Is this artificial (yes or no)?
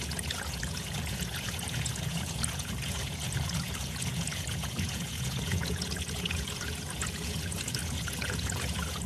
yes